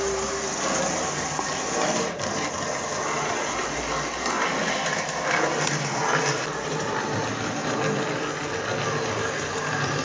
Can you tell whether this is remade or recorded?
recorded